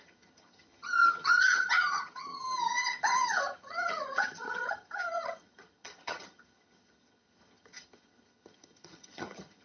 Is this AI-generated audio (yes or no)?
yes